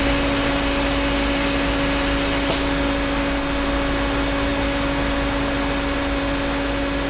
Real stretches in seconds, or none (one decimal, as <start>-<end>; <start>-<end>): 0.0-7.1